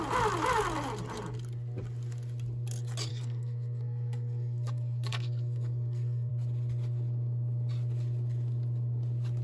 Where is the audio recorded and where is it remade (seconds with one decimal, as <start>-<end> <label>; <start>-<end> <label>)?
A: 0.0-3.1 recorded; 3.1-6.3 remade; 6.3-9.4 recorded